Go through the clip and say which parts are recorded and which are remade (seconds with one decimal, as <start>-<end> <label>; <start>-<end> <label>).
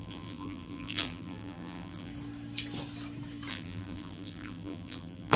0.0-2.1 remade; 2.1-3.5 recorded; 3.5-5.4 remade